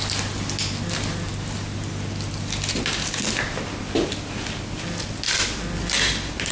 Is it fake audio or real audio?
real